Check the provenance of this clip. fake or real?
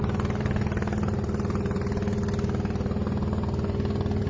real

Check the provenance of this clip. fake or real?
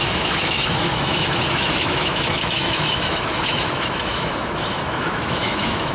fake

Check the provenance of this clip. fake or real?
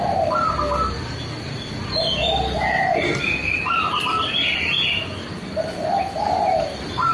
real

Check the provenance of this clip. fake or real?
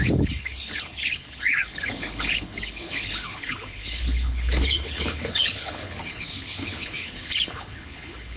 fake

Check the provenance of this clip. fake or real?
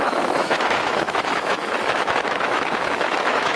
fake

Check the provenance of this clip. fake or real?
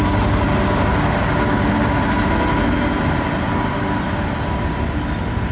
real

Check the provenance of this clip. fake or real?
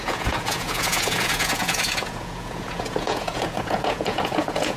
fake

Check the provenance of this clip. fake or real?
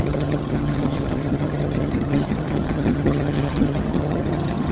fake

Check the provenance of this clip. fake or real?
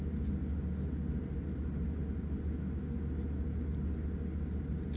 real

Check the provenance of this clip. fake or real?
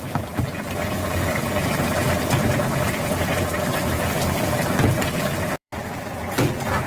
fake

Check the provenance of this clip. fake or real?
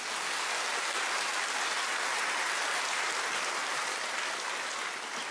real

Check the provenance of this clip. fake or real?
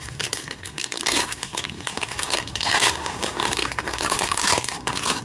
fake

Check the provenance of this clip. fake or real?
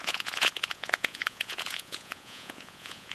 fake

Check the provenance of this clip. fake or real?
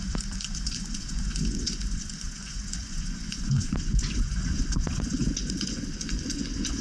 fake